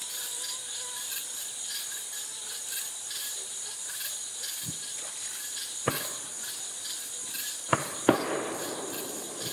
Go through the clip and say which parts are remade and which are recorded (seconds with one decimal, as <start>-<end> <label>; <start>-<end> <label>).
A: 0.0-7.7 recorded; 7.7-9.5 remade